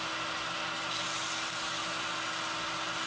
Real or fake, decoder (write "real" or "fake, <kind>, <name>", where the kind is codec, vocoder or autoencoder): real